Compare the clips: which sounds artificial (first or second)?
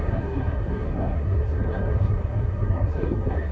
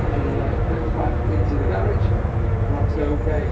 first